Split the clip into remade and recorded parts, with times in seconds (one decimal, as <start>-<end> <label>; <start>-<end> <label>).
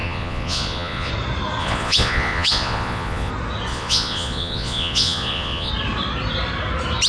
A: 0.0-1.1 remade; 1.1-1.6 recorded; 1.6-3.3 remade; 3.3-3.7 recorded; 3.7-5.7 remade; 5.7-7.1 recorded